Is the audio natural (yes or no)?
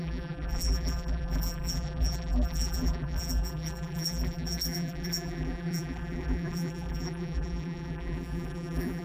no